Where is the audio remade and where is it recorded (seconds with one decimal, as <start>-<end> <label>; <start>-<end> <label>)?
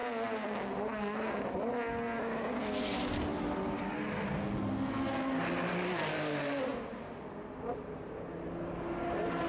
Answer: 0.0-9.5 recorded